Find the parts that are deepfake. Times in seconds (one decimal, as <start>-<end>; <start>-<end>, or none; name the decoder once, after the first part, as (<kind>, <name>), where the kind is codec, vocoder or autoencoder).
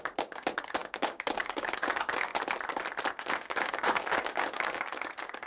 0.0-2.3 (codec, DAC); 3.1-5.5